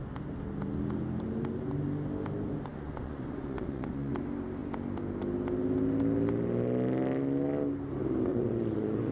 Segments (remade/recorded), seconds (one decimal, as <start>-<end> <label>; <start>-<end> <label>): 0.0-2.7 recorded; 2.7-4.1 remade; 4.1-8.3 recorded; 8.3-9.1 remade